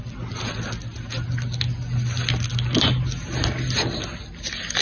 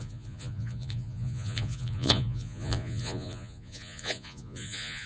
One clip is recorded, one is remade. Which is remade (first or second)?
second